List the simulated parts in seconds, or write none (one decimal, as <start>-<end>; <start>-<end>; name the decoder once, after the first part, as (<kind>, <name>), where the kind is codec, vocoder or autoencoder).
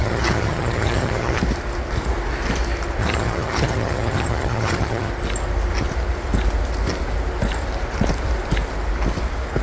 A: 0.0-1.4 (vocoder, HiFi-GAN); 3.0-5.1